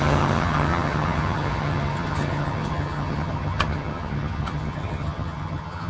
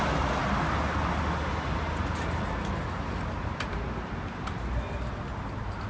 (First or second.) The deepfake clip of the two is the first